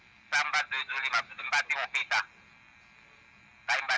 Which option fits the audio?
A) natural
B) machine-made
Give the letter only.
A